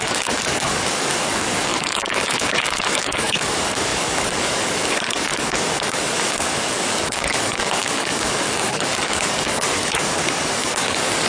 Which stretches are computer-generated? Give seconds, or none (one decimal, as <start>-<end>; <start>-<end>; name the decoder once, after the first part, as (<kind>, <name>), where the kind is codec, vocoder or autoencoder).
0.0-11.3 (codec, DAC)

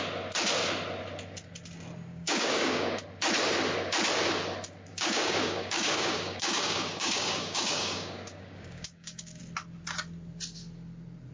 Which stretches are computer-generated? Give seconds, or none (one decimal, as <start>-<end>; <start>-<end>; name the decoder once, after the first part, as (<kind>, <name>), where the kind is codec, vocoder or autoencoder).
2.1-3.0 (codec, DAC); 4.9-9.4

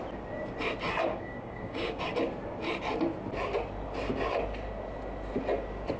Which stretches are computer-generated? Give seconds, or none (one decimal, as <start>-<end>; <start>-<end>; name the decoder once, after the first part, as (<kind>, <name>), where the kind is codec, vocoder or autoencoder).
1.1-2.0 (codec, DAC)

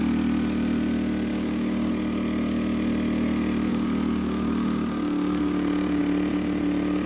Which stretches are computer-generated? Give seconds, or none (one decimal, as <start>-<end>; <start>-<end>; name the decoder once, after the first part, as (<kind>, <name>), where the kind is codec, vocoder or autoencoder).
1.3-1.9 (codec, DAC); 3.7-6.0

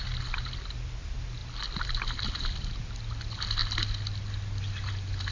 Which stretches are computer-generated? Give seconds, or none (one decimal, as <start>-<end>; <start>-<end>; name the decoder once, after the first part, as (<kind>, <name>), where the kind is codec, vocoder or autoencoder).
none

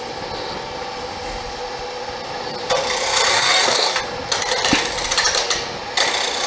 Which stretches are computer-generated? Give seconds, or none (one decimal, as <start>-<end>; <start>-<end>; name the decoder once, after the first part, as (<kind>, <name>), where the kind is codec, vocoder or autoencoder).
3.3-4.0 (codec, DAC)

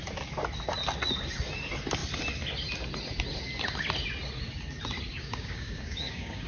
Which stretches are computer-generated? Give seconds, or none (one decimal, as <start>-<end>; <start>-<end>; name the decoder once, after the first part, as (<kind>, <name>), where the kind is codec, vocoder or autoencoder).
5.1-6.5 (codec, DAC)